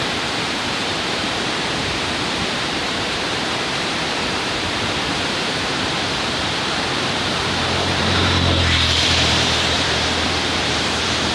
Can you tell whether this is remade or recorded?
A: remade